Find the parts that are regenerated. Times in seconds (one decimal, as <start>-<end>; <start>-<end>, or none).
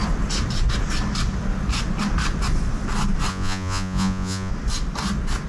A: 3.3-4.5